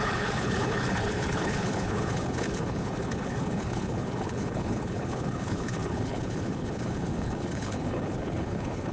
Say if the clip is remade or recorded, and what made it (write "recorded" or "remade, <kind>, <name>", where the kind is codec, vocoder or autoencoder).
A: remade, codec, HILCodec